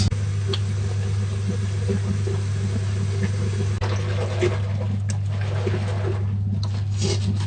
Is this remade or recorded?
recorded